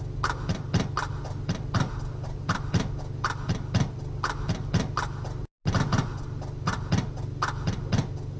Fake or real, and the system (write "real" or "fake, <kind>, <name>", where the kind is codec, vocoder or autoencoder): real